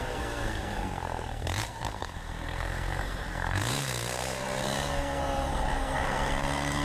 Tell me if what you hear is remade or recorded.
remade